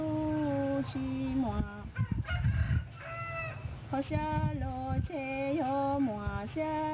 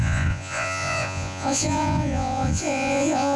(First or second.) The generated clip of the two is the second